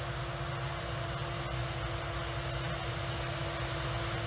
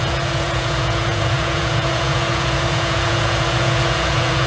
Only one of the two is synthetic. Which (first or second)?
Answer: second